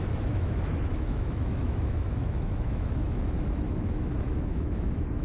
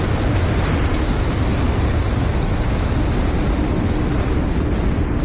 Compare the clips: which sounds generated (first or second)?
first